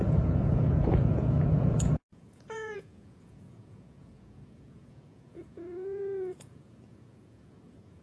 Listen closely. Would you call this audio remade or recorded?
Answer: remade